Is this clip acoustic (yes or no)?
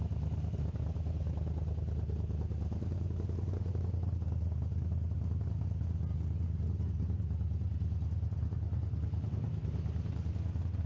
yes